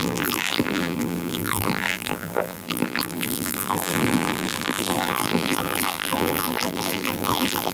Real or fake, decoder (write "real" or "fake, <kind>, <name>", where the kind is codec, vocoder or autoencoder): fake, vocoder, BigVGAN v2